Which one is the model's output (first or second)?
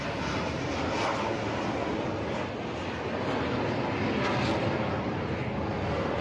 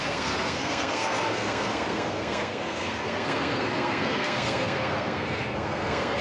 second